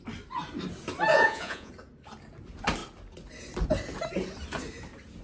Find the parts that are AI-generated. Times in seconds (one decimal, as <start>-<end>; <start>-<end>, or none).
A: 1.1-1.7